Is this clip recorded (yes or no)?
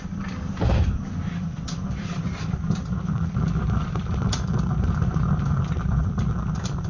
no